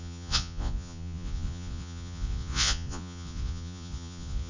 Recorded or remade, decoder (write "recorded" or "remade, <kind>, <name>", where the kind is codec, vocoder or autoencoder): remade, vocoder, Vocos